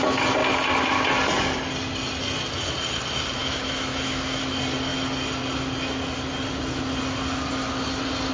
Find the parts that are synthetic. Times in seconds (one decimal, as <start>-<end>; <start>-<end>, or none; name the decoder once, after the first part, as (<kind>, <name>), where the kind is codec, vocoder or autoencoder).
3.4-4.4 (autoencoder, DAC-VAE)